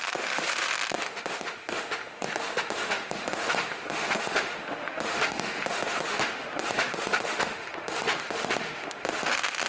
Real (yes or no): no